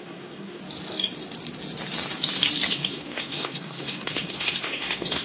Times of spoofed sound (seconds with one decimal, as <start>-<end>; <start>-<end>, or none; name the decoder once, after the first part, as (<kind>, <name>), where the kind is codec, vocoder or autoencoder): 0.0-0.6 (codec, SNAC); 2.7-5.2